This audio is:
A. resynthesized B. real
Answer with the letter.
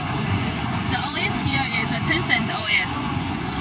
A